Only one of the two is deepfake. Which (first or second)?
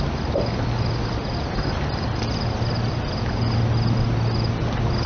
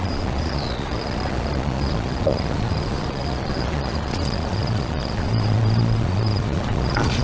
second